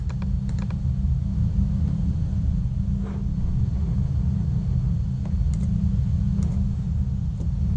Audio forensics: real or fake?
real